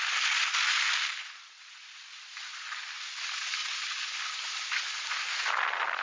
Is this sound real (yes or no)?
yes